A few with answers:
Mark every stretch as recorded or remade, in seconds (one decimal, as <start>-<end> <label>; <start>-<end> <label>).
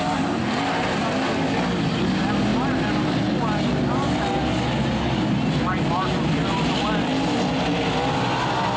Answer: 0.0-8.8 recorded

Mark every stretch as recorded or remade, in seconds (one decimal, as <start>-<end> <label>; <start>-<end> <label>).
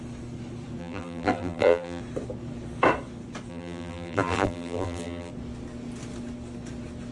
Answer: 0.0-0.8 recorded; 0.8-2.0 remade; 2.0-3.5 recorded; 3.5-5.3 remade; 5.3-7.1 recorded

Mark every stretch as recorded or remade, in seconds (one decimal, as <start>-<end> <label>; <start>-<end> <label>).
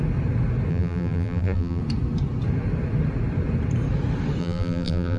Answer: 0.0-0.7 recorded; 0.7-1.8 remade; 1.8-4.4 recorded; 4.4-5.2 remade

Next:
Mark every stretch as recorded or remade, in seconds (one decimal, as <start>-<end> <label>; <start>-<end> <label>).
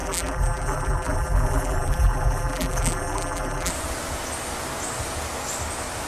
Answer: 0.0-3.7 remade; 3.7-6.1 recorded